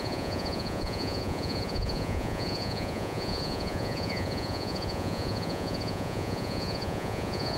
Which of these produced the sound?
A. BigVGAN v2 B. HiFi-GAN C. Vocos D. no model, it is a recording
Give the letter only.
C